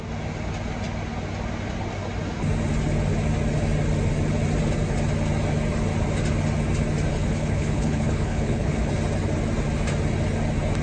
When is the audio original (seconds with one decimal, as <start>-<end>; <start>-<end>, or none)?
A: 0.0-7.1; 8.9-10.8